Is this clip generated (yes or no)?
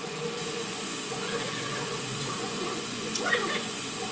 yes